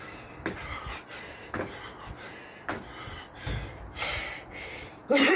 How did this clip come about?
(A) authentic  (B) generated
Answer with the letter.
A